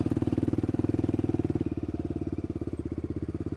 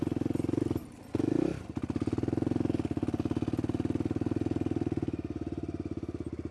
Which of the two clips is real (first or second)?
second